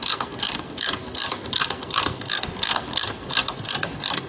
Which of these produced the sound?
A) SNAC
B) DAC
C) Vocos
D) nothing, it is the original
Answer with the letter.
A